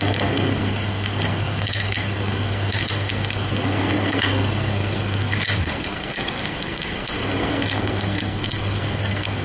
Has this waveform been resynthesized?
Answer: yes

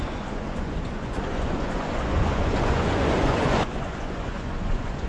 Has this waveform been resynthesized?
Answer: yes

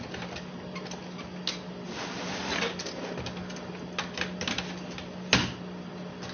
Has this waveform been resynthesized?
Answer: no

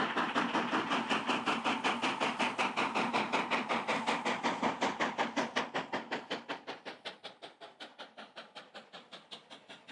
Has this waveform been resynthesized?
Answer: no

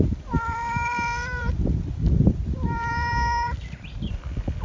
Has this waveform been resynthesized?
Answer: yes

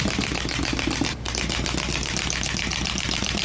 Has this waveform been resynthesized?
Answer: no